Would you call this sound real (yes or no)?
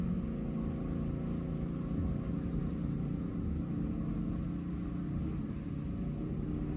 yes